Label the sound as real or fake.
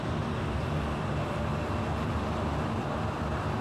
fake